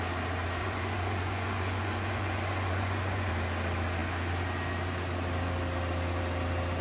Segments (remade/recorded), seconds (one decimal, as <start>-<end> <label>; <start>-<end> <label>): 0.0-0.6 recorded; 0.6-3.3 remade; 3.3-6.8 recorded